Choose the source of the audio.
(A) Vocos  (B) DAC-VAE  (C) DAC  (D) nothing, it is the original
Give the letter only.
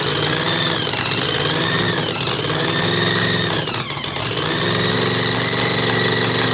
D